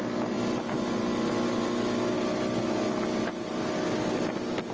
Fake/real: real